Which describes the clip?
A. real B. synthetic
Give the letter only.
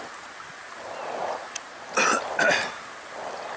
A